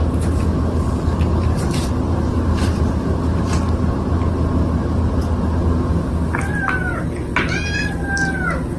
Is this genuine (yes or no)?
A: yes